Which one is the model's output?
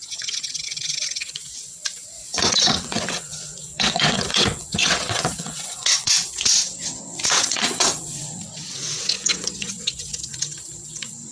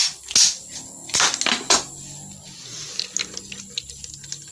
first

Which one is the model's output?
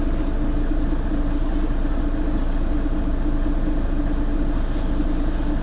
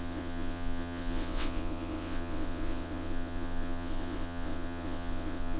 second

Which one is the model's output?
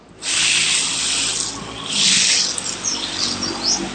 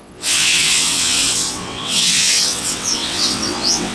second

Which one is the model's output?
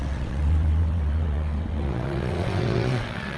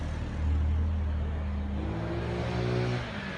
first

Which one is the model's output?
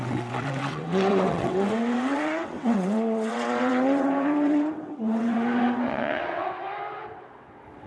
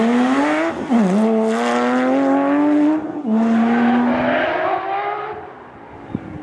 first